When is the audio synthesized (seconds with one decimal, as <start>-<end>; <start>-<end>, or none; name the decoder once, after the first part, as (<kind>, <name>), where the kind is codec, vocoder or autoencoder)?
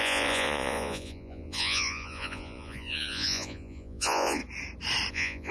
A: 0.0-4.4 (vocoder, Vocos); 5.1-5.5